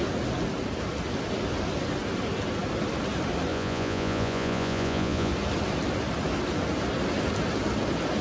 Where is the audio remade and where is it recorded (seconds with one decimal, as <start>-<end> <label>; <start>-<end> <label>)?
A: 0.0-3.5 recorded; 3.5-5.3 remade; 5.3-8.2 recorded